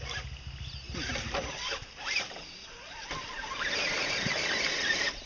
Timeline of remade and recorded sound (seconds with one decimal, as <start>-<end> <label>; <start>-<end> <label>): 0.0-1.8 recorded; 1.8-5.3 remade